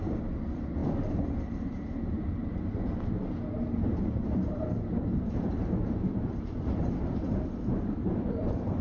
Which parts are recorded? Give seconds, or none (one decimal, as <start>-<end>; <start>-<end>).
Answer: none